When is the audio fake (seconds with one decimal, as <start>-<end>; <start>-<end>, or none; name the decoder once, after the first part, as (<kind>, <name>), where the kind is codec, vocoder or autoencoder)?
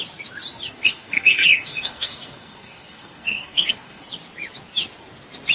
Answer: 0.8-4.0 (codec, SNAC)